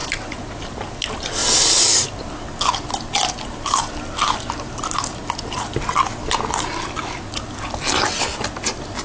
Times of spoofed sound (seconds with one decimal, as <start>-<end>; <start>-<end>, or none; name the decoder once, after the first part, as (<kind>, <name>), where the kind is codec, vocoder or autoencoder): none